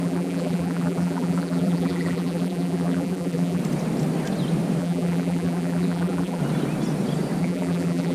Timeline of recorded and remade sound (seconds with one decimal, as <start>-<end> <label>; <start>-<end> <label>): 0.0-3.6 remade; 3.6-4.8 recorded; 4.8-6.4 remade; 6.4-7.4 recorded; 7.4-8.1 remade